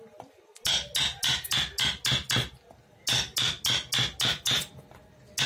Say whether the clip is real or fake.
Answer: real